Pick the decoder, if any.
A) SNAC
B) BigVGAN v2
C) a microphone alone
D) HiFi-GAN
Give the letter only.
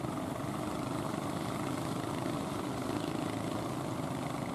C